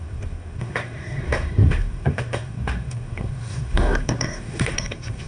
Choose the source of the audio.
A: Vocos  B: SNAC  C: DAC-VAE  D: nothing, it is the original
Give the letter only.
B